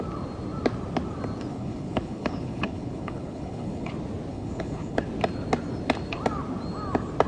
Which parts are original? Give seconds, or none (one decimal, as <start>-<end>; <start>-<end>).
0.0-1.5; 3.9-4.3; 5.0-7.3